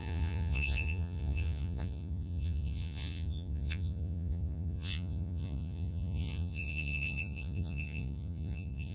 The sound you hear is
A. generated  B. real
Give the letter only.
A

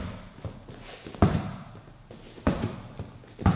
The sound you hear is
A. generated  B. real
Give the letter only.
B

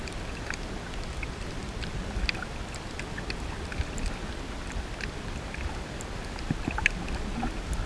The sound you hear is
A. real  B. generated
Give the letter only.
A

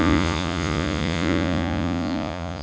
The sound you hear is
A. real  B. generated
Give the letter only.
B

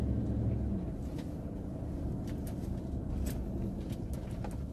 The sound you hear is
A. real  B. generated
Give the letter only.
A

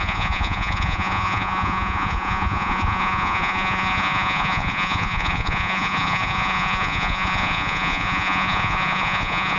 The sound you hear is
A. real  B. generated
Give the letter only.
B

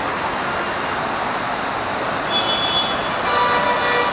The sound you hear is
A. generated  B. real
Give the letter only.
B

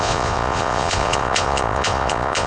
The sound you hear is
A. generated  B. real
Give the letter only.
A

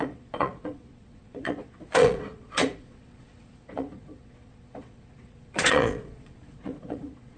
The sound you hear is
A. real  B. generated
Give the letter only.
B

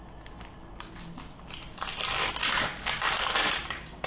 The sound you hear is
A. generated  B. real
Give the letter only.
B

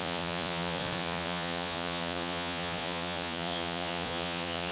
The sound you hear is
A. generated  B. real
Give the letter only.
A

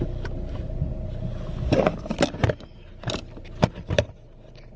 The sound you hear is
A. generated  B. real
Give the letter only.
B